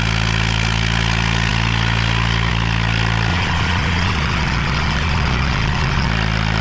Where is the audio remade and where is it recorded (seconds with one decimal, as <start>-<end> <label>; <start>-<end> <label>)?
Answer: 0.0-3.3 recorded; 3.3-6.1 remade; 6.1-6.6 recorded